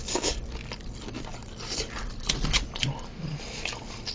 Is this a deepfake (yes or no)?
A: no